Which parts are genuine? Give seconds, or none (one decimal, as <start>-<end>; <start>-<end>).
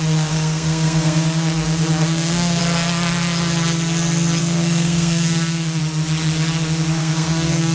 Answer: 2.6-4.4; 5.8-7.0